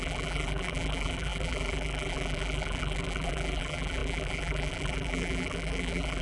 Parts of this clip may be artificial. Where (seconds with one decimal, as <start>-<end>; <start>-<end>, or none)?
0.0-6.2